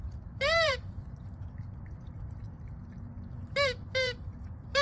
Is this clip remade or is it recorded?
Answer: remade